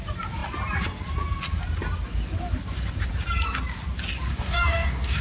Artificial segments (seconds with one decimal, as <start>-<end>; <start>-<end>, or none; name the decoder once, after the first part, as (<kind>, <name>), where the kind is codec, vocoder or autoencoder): 4.3-5.2 (codec, DAC)

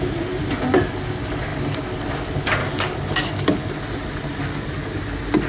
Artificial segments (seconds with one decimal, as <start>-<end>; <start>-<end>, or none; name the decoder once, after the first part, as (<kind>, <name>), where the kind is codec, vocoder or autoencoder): 2.6-3.8 (codec, DAC); 4.5-5.0

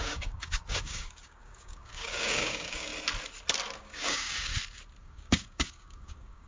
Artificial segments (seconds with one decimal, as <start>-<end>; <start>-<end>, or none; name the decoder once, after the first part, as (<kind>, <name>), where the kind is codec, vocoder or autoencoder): 0.0-2.9 (codec, DAC); 3.8-4.5; 5.0-6.5

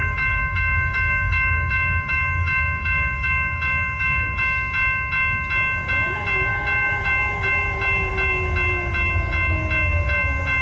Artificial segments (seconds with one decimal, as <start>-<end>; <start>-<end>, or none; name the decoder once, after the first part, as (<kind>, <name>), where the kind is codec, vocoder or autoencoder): 0.0-4.4 (codec, DAC)

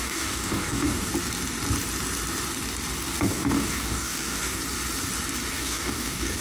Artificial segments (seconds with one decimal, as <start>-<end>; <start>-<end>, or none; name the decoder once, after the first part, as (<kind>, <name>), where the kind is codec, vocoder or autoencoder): 0.0-1.1 (codec, DAC); 3.3-4.6; 5.5-6.4